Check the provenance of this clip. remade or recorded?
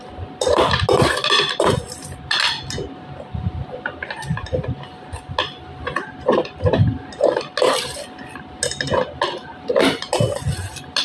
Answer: recorded